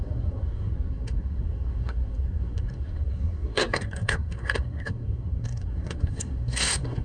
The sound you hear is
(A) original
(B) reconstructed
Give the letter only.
B